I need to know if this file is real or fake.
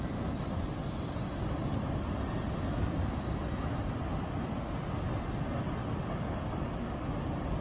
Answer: real